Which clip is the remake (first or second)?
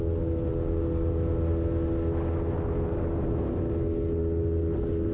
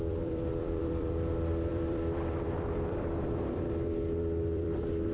second